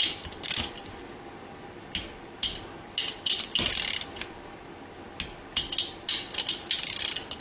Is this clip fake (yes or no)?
no